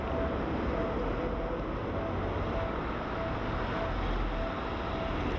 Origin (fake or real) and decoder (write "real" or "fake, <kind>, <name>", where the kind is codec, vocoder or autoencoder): real